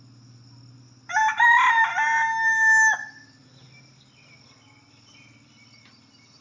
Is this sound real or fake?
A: real